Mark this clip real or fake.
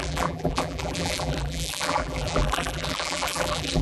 fake